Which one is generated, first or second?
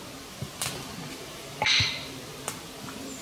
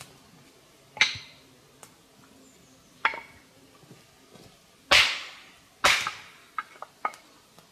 first